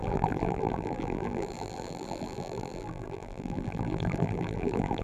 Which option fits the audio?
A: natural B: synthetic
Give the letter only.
B